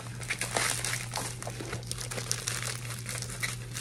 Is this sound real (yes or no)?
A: yes